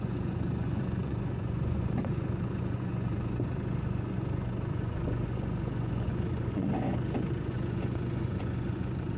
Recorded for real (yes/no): no